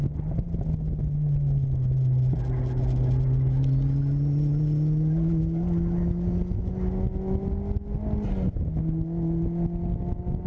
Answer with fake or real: real